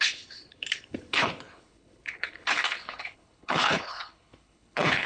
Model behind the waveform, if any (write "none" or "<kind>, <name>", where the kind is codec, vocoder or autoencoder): codec, HILCodec